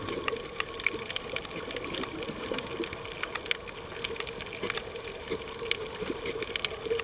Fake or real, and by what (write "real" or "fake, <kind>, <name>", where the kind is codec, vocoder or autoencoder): real